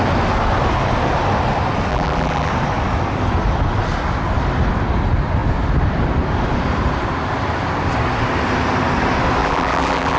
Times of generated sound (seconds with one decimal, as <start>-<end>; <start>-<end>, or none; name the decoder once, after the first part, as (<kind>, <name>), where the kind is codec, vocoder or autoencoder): 1.9-2.5 (vocoder, BigVGAN v2); 9.4-10.2